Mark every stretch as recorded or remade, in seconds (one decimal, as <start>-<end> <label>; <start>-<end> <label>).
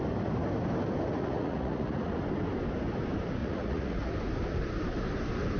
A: 0.0-1.2 recorded; 1.2-2.2 remade; 2.2-3.4 recorded; 3.4-4.1 remade; 4.1-5.6 recorded